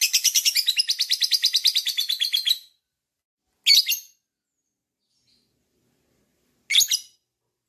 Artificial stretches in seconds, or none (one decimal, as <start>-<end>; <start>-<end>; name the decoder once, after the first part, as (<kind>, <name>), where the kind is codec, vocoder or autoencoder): 1.4-2.1 (vocoder, BigVGAN v2)